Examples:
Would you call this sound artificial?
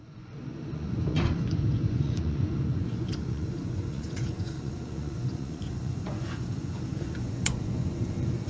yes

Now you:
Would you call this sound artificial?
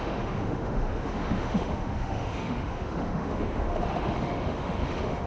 yes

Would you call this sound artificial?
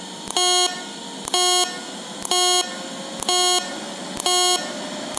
no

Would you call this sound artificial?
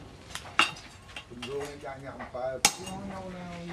no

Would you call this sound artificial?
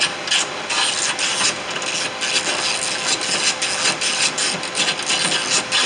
no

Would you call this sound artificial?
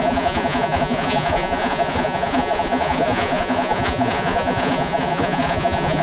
yes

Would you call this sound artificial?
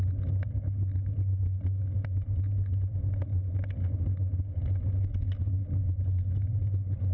no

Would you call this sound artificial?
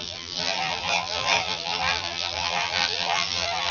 yes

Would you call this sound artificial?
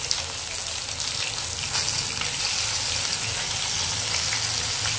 no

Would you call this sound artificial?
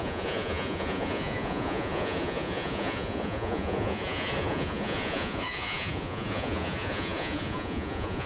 yes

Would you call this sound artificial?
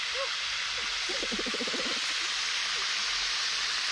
no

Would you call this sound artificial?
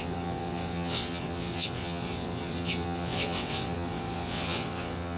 yes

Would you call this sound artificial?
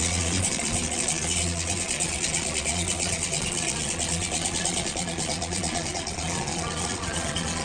yes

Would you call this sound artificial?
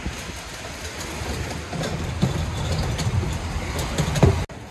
no